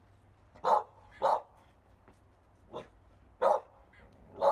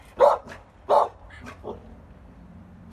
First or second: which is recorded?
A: first